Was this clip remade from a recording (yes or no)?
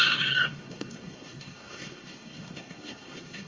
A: yes